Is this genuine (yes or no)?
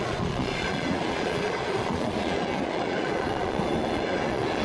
no